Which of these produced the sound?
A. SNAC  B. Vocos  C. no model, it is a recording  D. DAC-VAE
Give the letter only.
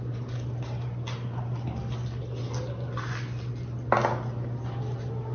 C